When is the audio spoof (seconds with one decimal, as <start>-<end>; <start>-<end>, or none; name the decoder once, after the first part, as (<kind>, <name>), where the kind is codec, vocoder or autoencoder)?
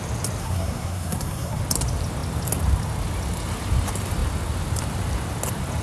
0.4-1.6 (codec, SNAC)